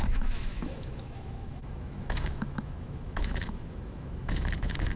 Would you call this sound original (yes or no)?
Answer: no